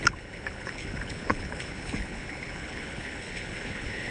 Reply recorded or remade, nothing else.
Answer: remade